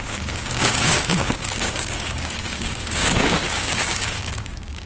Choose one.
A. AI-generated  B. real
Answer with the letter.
A